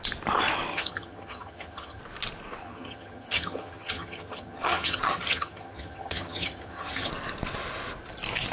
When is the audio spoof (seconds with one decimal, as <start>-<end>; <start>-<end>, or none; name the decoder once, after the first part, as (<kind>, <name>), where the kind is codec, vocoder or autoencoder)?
0.7-2.0 (vocoder, HiFi-GAN); 2.6-7.1